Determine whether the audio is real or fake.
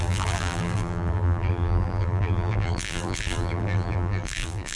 fake